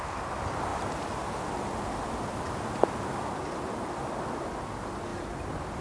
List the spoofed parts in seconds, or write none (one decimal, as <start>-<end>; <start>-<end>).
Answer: none